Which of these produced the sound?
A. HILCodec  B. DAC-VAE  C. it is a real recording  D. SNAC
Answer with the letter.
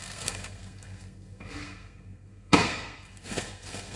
D